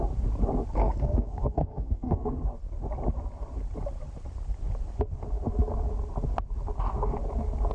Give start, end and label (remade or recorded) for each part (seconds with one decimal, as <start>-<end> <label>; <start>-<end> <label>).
0.0-0.8 recorded; 0.8-2.3 remade; 2.3-7.7 recorded